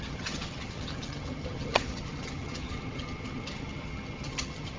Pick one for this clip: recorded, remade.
remade